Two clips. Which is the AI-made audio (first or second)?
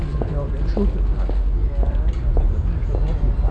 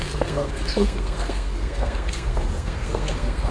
second